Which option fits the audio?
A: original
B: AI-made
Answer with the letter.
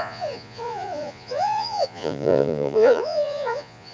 B